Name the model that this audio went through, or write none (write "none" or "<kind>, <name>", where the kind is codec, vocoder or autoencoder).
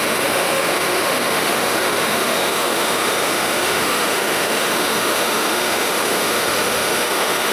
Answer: autoencoder, DAC-VAE